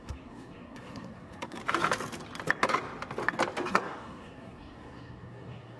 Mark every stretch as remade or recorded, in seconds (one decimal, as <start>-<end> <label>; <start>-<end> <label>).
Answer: 0.0-1.6 remade; 1.6-3.7 recorded; 3.7-5.8 remade